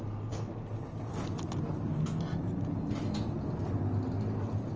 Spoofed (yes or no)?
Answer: no